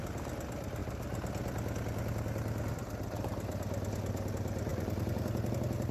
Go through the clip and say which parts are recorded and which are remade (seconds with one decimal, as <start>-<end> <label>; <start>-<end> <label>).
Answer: 0.0-4.7 recorded; 4.7-5.5 remade; 5.5-5.9 recorded